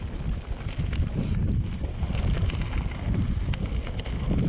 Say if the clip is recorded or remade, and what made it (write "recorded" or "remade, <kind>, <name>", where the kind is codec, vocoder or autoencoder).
recorded